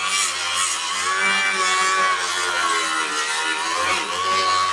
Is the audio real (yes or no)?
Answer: yes